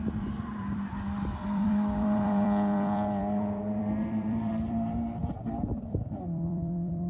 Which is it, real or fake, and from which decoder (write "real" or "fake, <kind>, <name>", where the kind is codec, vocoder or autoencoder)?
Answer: fake, vocoder, BigVGAN v2